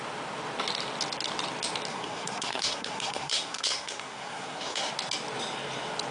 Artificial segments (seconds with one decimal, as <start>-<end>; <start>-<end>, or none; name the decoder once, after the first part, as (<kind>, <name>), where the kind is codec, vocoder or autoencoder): 1.9-4.9 (codec, SNAC)